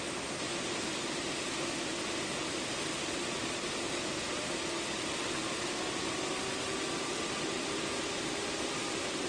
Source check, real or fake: real